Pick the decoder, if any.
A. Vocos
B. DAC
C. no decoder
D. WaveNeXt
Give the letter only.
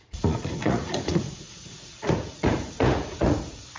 A